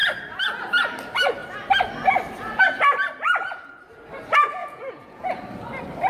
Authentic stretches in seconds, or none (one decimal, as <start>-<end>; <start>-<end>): 0.0-4.6; 5.4-6.1